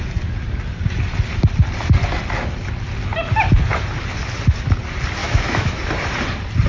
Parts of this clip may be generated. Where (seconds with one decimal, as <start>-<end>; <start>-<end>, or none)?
5.2-5.8